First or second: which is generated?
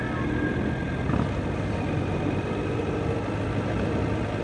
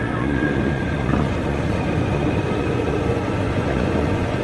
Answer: second